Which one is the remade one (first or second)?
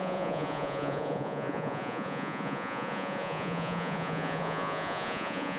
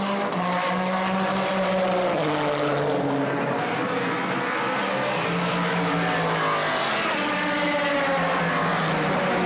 first